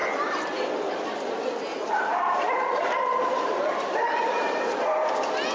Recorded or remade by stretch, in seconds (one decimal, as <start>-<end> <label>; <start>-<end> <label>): 0.0-1.7 recorded; 1.7-4.8 remade; 4.8-5.5 recorded

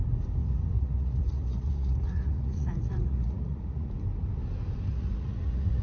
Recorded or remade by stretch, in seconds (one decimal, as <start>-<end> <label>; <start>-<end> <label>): 0.0-0.4 recorded; 0.4-3.9 remade; 3.9-4.9 recorded; 4.9-5.8 remade

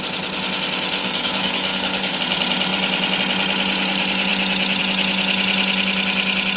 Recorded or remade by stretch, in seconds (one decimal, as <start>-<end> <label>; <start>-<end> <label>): 0.0-1.0 recorded; 1.0-2.2 remade; 2.2-6.6 recorded

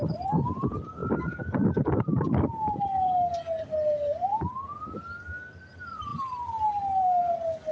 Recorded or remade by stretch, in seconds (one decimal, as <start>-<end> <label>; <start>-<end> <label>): 0.0-7.7 recorded

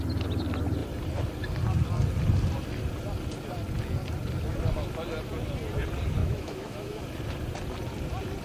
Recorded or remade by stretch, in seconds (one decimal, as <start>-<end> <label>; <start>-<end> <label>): 0.0-6.2 recorded; 6.2-7.0 remade; 7.0-8.4 recorded

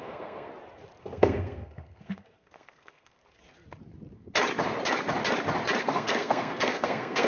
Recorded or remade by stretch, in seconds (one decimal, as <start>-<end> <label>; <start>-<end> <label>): 0.0-0.5 remade; 0.5-1.0 recorded; 1.0-3.2 remade; 3.2-5.8 recorded; 5.8-7.3 remade